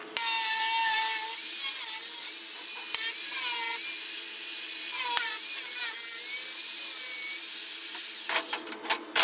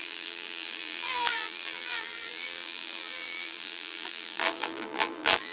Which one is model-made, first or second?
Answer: second